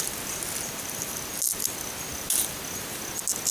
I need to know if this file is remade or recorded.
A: recorded